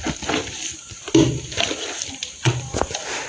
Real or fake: real